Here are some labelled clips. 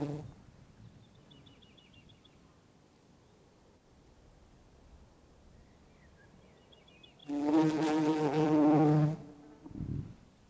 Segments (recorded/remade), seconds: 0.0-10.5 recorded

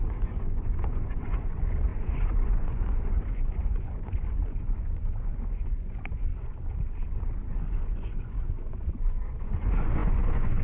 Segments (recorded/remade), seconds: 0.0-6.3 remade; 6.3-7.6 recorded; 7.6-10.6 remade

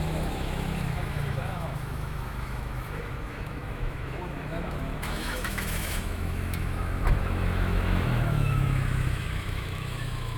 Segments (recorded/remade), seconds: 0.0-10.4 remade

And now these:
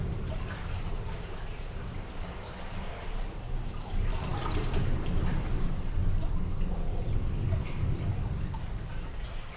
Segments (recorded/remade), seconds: 0.0-2.3 recorded; 2.3-2.9 remade; 2.9-9.6 recorded

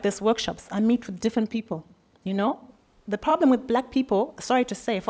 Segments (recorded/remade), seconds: 0.0-1.2 recorded; 1.2-2.7 remade; 2.7-5.1 recorded